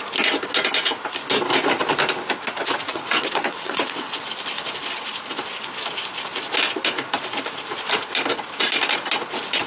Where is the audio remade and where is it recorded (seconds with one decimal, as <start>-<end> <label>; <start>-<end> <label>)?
0.0-2.9 recorded; 2.9-4.2 remade; 4.2-9.7 recorded